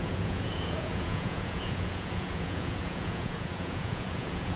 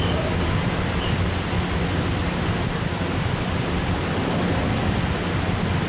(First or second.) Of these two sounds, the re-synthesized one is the first